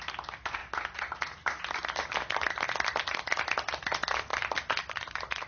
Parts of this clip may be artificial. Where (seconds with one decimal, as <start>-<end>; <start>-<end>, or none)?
none